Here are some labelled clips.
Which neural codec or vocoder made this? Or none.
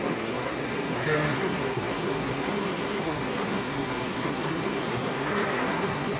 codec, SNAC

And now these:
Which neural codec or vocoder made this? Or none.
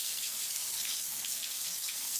codec, SNAC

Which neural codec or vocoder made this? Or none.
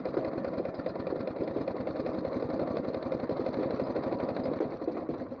none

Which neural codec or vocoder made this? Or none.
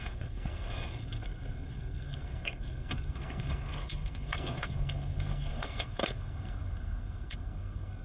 codec, SNAC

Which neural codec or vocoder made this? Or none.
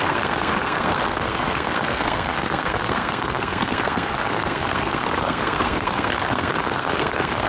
codec, SNAC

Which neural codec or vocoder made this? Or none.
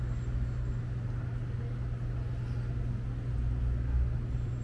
none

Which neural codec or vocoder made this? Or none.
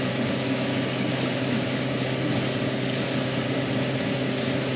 none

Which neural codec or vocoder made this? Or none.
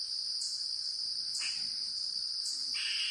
none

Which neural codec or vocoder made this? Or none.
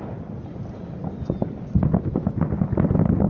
none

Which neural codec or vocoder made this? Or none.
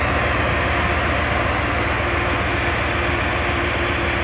none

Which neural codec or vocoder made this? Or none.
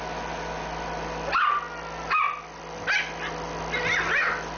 none